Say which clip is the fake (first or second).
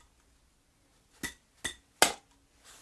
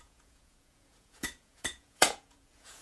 second